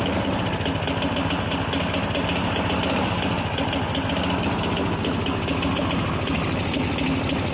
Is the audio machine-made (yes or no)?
no